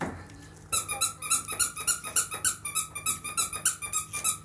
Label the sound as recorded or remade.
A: recorded